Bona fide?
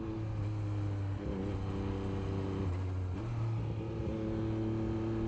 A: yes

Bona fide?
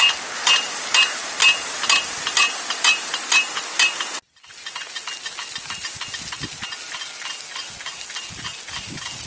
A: yes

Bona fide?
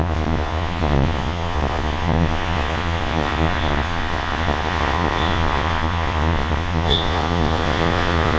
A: no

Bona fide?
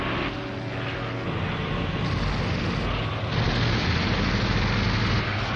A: yes